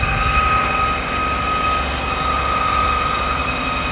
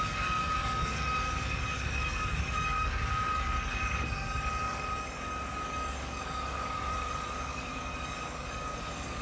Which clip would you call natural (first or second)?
first